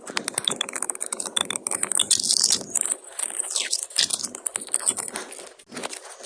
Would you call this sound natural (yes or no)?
yes